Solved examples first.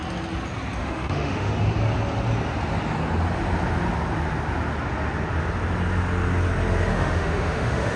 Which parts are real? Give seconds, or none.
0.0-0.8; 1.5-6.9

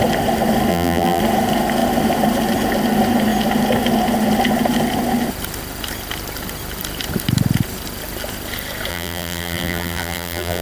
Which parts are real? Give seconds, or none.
0.0-0.7; 1.2-8.9

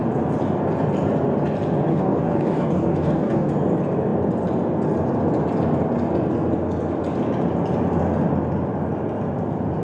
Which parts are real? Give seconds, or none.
0.0-1.9; 3.5-9.8

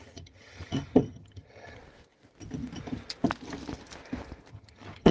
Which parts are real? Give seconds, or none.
1.8-4.5